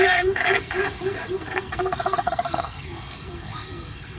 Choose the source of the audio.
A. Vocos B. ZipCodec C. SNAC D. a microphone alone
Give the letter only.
C